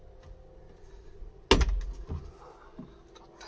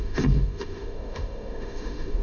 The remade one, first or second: second